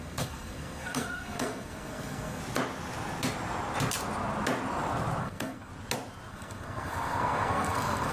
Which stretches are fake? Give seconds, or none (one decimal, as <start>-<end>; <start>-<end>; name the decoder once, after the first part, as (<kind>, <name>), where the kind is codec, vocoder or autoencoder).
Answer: 0.0-2.4 (codec, SNAC); 5.2-5.7; 6.3-8.1